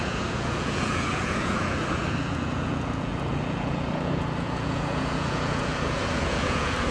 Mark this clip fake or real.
fake